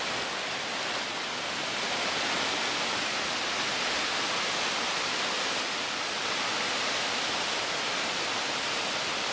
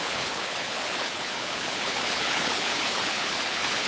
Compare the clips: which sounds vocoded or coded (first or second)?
second